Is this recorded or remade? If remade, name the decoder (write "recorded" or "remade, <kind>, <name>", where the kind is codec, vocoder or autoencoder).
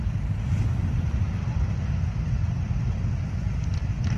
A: recorded